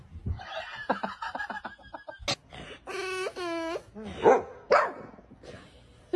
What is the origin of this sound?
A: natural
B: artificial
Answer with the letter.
A